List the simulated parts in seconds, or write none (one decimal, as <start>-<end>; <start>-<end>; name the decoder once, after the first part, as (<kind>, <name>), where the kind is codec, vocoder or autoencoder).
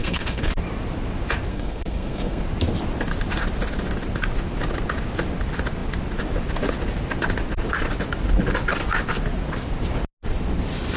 0.0-0.5 (codec, SNAC); 1.5-2.4